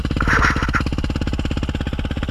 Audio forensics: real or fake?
real